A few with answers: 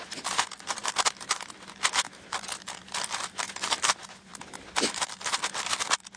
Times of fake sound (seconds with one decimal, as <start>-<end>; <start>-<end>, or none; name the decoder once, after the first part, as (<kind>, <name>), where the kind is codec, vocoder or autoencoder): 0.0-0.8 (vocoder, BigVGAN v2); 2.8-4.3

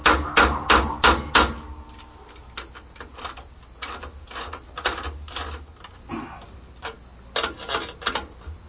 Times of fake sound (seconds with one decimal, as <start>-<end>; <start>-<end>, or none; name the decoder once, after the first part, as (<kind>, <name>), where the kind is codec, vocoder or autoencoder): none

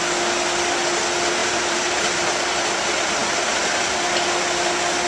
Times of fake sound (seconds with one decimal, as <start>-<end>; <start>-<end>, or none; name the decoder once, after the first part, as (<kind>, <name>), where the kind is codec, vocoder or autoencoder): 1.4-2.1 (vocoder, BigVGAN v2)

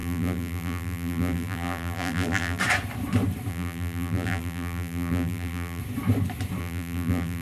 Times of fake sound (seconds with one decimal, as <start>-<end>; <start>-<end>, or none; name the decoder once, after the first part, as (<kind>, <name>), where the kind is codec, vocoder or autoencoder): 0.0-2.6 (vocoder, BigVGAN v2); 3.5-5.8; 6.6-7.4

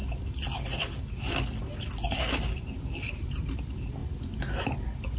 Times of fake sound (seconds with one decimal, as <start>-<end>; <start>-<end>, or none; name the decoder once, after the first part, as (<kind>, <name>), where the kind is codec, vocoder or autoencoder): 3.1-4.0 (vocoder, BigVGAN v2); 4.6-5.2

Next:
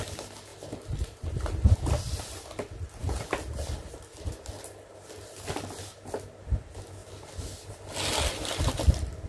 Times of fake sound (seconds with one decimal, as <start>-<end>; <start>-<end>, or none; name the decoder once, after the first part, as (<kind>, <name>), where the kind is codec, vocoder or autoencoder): none